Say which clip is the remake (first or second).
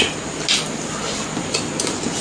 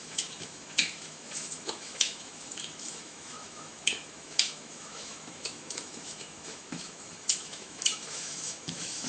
second